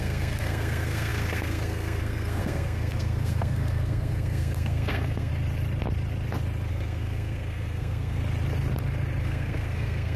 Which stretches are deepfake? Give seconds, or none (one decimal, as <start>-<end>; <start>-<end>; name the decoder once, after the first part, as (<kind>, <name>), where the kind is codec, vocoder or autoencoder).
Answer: 0.0-5.3 (codec, SNAC); 6.7-8.2; 9.2-10.2